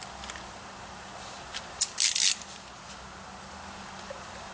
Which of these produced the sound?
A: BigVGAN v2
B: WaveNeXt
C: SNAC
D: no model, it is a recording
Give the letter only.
D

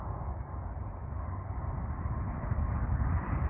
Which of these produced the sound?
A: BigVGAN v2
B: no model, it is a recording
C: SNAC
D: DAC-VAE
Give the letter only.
B